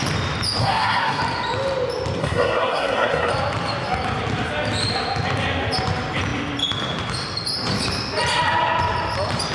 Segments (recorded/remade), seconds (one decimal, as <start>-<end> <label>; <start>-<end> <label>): 0.0-0.6 recorded; 0.6-1.2 remade; 1.2-2.2 recorded; 2.2-3.3 remade; 3.3-9.5 recorded